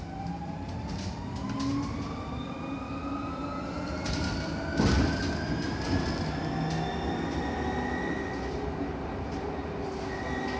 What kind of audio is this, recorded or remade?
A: recorded